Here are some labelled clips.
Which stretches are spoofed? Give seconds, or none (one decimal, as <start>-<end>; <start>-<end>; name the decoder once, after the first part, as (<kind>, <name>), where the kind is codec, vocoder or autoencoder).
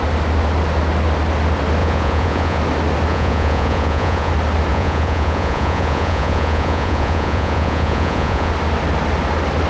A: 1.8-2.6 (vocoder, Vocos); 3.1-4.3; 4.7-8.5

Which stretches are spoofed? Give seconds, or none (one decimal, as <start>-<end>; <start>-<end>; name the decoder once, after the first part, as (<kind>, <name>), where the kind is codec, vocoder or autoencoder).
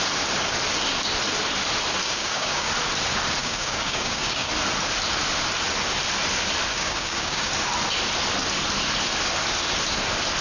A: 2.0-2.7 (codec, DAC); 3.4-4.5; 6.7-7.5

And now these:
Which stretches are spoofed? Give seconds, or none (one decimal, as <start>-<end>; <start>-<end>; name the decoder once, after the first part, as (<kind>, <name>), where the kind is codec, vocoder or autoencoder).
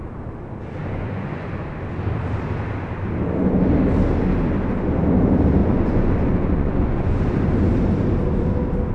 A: 0.8-1.5 (vocoder, Vocos); 5.6-7.2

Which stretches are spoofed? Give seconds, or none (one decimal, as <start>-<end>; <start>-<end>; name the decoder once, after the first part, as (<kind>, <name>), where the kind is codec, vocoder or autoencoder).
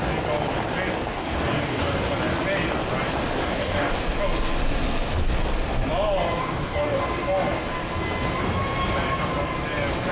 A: 1.1-1.8 (codec, DAC); 3.4-3.9; 6.4-7.0